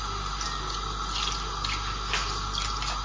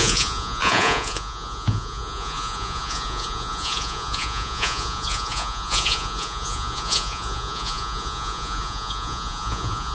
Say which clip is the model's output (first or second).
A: second